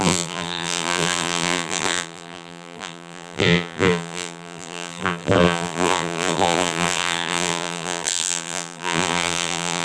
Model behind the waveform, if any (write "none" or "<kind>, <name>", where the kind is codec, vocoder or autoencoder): vocoder, BigVGAN v2